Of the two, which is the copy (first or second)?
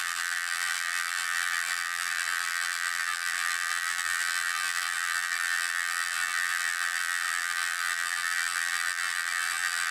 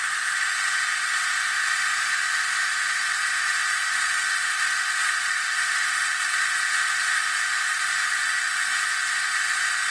first